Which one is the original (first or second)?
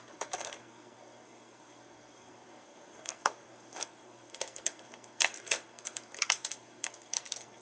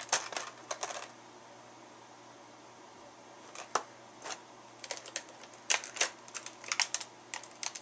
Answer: second